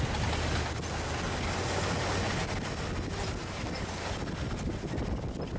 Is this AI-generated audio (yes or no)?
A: no